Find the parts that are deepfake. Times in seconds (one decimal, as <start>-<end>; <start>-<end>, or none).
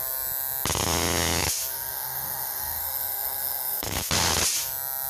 1.7-4.1